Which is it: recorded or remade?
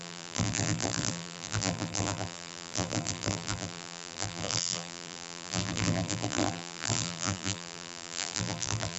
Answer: remade